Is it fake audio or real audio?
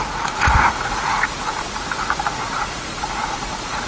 fake